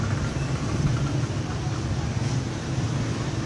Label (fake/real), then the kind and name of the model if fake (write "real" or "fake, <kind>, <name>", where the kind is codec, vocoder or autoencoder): real